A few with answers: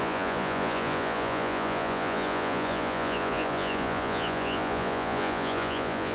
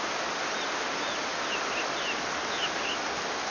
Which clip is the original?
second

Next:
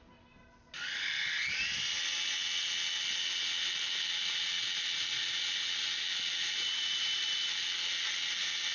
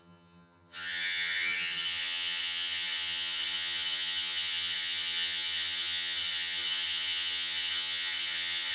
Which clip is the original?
first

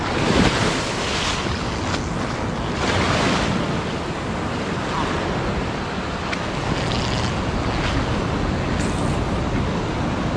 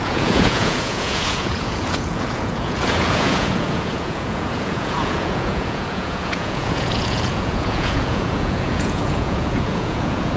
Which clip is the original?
first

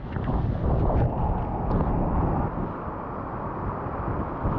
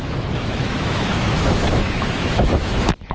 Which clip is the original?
first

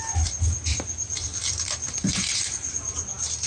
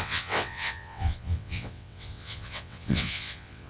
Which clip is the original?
first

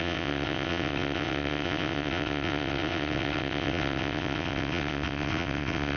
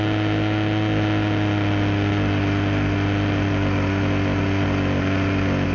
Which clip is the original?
second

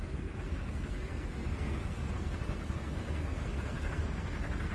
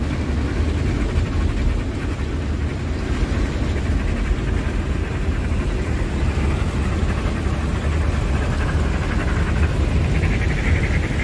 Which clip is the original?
second